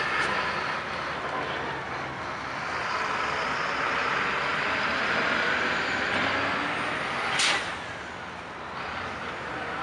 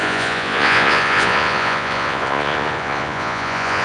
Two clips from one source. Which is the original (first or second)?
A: first